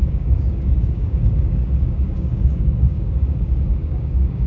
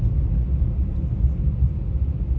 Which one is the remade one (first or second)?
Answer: first